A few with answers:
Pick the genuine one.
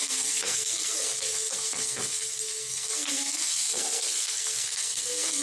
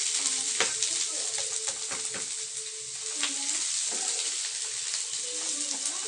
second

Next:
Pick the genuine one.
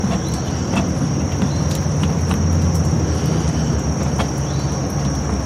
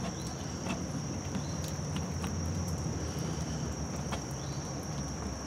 first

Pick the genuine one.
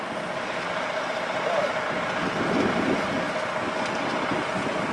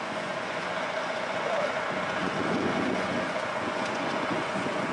first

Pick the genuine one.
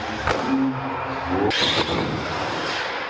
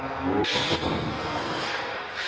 first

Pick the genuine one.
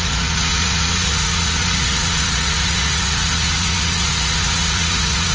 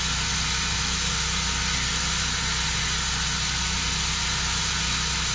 second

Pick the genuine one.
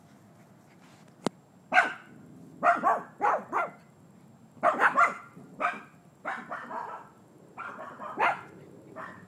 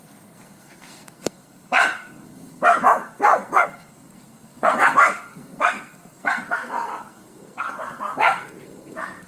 first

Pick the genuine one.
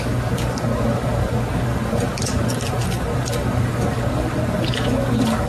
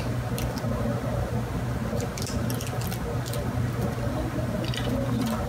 second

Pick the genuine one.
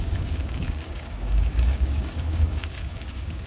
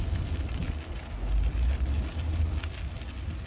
second